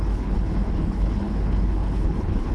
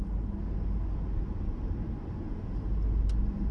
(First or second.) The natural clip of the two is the second